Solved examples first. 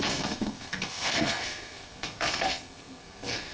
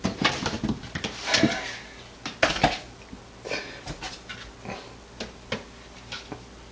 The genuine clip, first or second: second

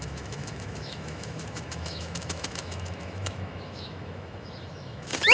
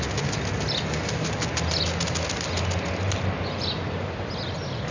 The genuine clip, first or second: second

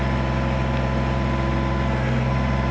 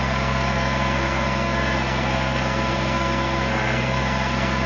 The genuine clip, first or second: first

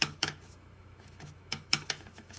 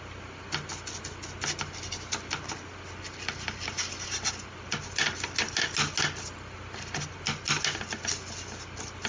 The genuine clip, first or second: second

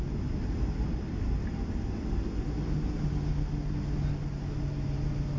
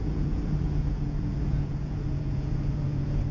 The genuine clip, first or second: first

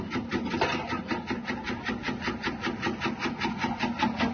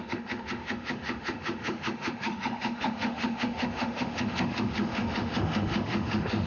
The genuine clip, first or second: first